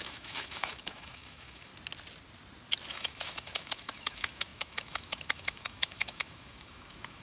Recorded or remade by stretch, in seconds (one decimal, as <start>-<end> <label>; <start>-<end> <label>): 0.0-1.7 remade; 1.7-2.9 recorded; 2.9-7.2 remade